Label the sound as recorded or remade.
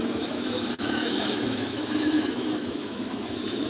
remade